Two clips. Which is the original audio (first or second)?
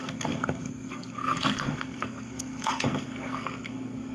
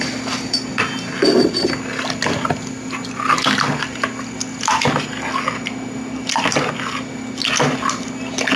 second